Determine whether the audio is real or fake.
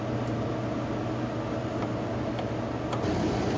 real